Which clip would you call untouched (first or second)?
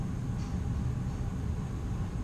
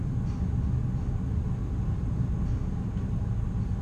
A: second